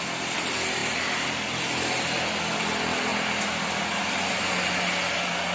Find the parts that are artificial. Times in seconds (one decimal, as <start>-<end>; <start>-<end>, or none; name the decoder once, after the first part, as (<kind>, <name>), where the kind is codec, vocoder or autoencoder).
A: none